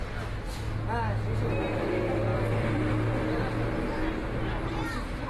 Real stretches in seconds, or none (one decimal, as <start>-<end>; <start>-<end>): 0.0-2.3; 2.9-5.3